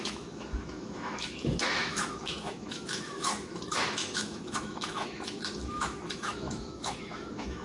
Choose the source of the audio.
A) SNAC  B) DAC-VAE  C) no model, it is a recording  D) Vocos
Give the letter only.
B